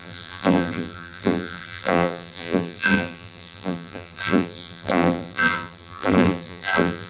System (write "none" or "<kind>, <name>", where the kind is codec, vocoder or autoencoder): vocoder, BigVGAN v2